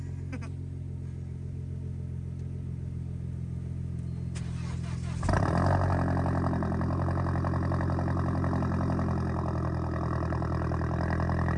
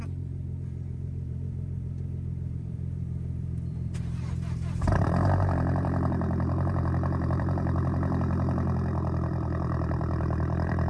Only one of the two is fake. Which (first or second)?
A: second